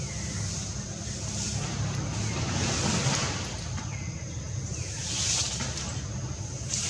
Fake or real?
real